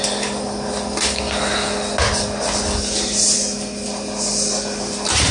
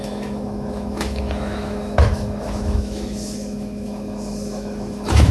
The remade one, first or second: second